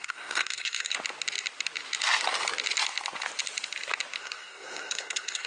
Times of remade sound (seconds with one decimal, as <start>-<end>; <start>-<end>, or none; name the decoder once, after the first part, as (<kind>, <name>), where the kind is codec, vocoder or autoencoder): 0.0-0.9 (codec, SNAC); 4.2-5.5